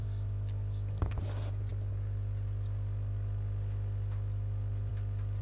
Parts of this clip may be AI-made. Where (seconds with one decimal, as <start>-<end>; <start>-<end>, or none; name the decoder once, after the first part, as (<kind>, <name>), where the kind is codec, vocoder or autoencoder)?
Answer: none